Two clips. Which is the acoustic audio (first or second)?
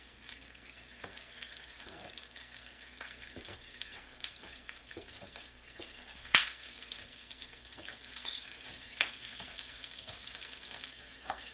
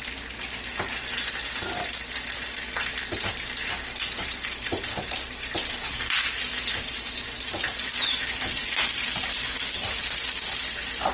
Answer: second